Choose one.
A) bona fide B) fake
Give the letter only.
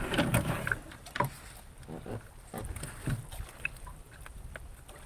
A